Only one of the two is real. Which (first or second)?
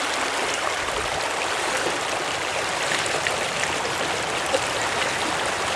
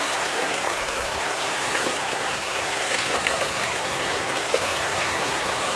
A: first